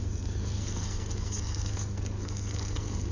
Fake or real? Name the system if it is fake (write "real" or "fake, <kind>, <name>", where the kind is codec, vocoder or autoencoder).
fake, codec, SNAC